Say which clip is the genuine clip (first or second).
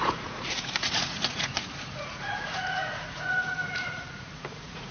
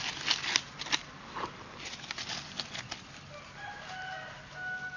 second